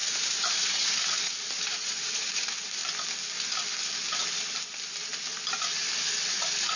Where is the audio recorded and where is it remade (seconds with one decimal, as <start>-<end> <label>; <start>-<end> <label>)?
0.0-2.8 remade; 2.8-6.3 recorded; 6.3-6.8 remade